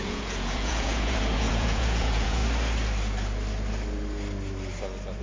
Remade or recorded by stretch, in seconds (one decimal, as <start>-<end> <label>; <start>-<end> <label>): 0.0-2.4 remade; 2.4-5.2 recorded